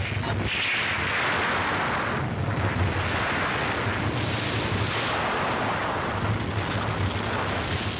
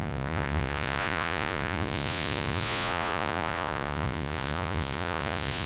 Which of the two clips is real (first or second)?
first